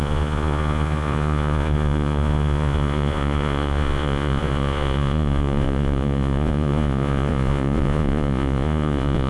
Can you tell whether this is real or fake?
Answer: fake